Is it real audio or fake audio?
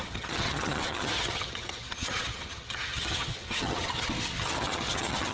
fake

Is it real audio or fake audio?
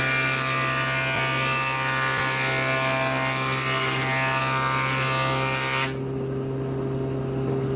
real